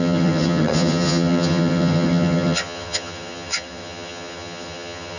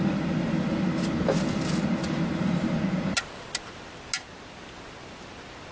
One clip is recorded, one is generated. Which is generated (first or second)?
first